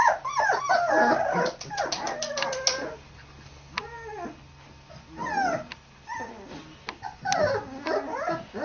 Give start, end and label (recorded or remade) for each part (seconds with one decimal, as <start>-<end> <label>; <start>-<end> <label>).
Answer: 0.0-0.6 remade; 0.6-8.6 recorded